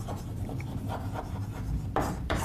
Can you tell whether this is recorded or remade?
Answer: remade